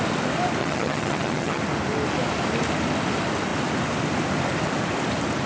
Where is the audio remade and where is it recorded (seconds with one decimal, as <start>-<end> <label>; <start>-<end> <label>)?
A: 0.0-0.6 recorded; 0.6-1.6 remade; 1.6-5.5 recorded